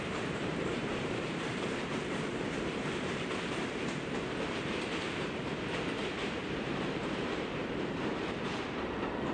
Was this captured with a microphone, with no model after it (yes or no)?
no